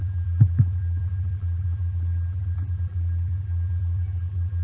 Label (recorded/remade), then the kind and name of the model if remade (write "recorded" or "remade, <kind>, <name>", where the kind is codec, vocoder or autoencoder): remade, vocoder, BigVGAN v2